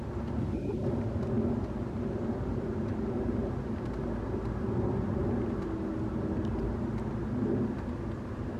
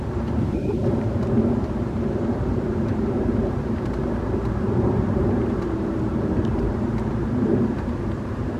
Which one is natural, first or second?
first